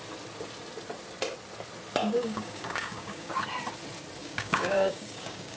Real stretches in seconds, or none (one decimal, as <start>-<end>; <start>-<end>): 0.0-2.0; 3.4-4.2